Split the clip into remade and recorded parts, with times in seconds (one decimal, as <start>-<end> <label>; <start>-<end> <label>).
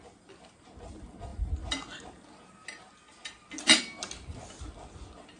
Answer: 0.0-5.4 recorded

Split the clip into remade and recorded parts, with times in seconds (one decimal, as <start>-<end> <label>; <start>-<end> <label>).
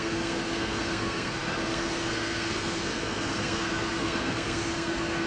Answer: 0.0-5.3 remade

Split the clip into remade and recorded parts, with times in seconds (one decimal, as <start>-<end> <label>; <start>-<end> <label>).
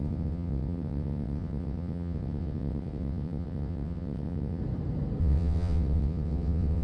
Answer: 0.0-4.6 remade; 4.6-5.2 recorded; 5.2-6.8 remade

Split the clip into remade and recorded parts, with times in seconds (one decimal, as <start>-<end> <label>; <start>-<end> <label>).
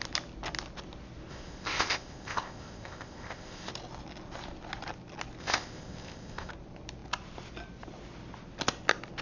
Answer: 0.0-1.3 recorded; 1.3-3.7 remade; 3.7-5.4 recorded; 5.4-6.5 remade; 6.5-9.2 recorded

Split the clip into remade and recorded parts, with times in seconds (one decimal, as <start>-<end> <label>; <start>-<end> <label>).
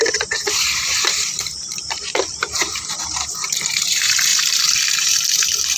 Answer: 0.0-5.8 remade